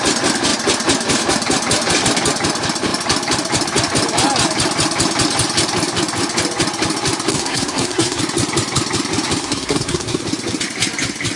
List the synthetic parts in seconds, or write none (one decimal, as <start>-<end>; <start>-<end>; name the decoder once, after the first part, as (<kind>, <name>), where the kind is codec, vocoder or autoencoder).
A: 7.3-8.2 (codec, SNAC); 9.4-10.2